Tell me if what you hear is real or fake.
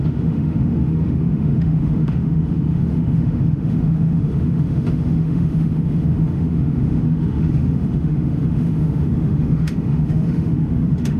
fake